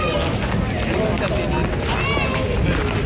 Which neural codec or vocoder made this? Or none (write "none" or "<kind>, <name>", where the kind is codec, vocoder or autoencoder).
none